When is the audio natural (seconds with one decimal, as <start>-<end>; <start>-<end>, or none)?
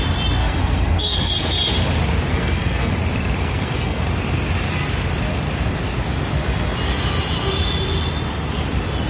0.0-0.4; 1.3-2.3; 2.9-3.4; 4.0-9.1